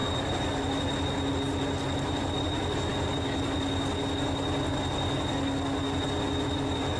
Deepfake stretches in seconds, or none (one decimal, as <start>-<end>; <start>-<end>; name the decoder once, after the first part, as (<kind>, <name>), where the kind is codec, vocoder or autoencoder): none